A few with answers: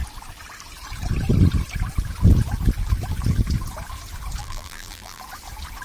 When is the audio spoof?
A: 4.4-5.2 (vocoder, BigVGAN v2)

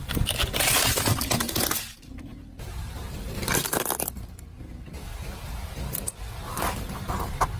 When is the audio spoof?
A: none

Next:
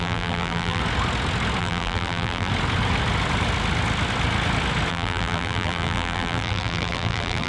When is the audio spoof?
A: 0.0-0.8 (vocoder, BigVGAN v2); 1.6-2.5; 4.9-7.5

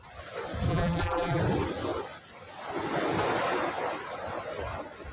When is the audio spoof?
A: 0.7-1.4 (vocoder, BigVGAN v2)

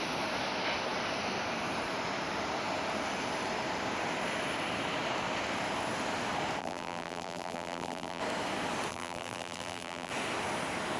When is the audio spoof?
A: 6.6-8.2 (vocoder, BigVGAN v2); 8.9-10.1

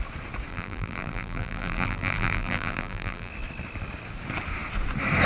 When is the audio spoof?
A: 0.5-3.3 (vocoder, BigVGAN v2)